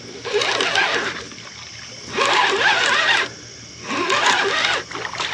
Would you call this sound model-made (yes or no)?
no